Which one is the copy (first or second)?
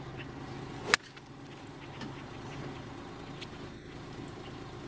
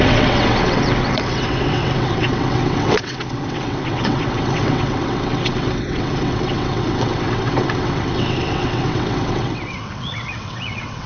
second